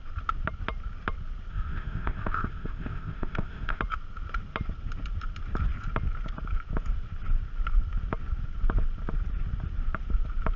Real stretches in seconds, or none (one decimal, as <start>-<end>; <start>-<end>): 0.0-1.5; 3.8-10.6